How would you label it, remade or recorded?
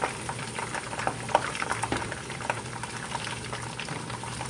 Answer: remade